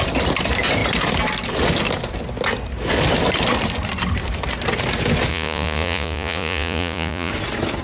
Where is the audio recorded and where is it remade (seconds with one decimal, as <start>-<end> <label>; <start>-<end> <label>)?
0.0-5.3 recorded; 5.3-7.3 remade; 7.3-7.8 recorded

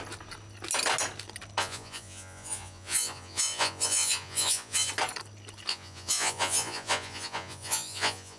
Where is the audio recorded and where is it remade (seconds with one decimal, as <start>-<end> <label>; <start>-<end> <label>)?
0.0-1.6 recorded; 1.6-4.9 remade; 4.9-5.7 recorded; 5.7-8.4 remade

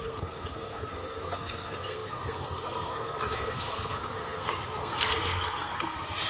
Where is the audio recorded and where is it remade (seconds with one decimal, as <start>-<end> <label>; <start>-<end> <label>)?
0.0-6.3 remade

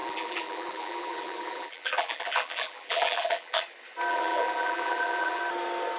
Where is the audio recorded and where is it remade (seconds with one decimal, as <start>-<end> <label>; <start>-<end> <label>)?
0.0-3.6 remade; 3.6-4.1 recorded; 4.1-5.4 remade; 5.4-6.0 recorded

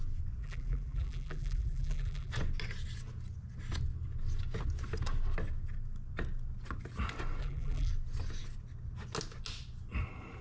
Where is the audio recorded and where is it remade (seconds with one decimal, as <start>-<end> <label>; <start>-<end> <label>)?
0.0-0.4 recorded; 0.4-2.3 remade; 2.3-7.4 recorded; 7.4-7.9 remade; 7.9-10.4 recorded

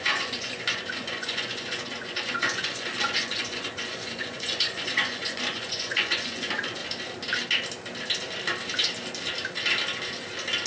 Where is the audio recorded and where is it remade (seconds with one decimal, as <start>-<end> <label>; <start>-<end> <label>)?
0.0-6.8 remade; 6.8-10.7 recorded